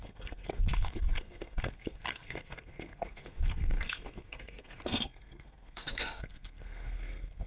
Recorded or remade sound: remade